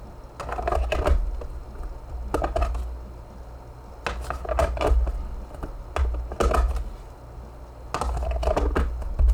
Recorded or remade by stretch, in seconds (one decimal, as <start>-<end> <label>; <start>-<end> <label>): 0.0-9.3 recorded